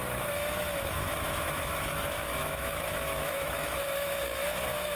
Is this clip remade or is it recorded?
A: remade